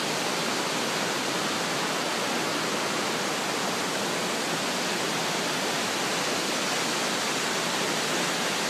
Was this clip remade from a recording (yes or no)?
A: no